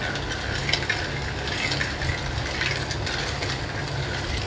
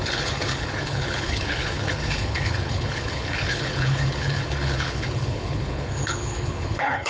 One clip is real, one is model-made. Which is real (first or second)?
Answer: first